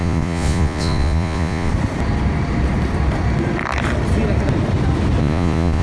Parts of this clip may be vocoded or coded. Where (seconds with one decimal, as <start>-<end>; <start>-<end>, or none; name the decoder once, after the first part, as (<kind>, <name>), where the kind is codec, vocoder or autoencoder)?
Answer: 0.0-1.7 (vocoder, Vocos); 5.2-5.8